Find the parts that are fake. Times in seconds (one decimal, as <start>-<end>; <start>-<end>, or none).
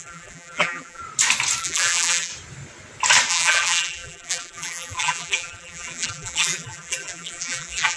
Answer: 0.0-1.0; 1.6-2.3; 3.3-8.0